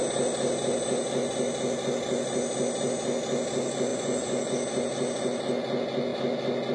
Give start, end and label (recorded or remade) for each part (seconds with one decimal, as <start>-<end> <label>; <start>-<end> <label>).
0.0-3.9 recorded; 3.9-4.5 remade; 4.5-6.7 recorded